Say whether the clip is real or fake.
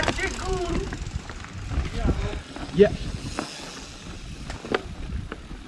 real